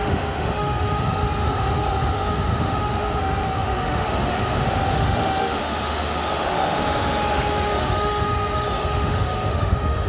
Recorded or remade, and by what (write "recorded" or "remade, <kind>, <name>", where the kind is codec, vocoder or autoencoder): remade, autoencoder, DAC-VAE